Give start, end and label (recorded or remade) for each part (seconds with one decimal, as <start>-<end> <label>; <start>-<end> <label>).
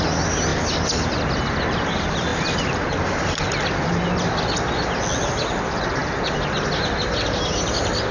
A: 0.0-8.1 recorded